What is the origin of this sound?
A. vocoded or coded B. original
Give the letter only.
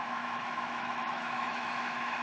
A